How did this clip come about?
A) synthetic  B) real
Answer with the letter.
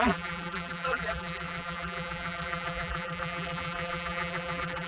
A